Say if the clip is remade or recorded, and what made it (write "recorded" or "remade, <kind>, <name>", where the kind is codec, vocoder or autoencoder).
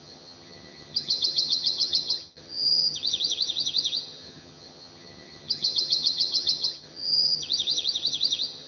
remade, vocoder, HiFi-GAN